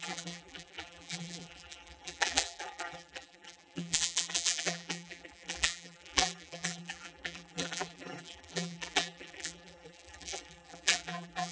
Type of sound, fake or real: fake